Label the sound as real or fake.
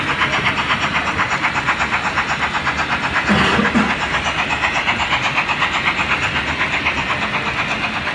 real